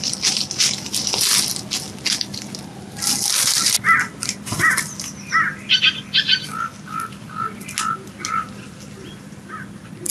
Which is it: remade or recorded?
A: recorded